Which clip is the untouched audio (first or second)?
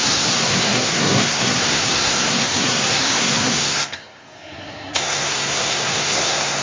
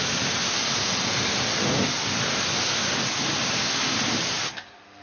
second